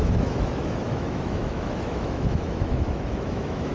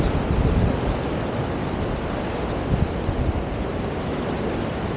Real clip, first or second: second